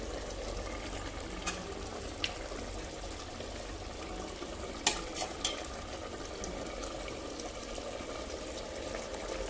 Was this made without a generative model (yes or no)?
yes